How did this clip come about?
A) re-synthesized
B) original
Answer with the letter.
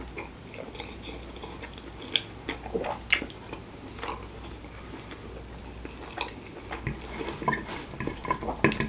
B